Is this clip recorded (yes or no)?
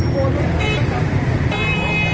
yes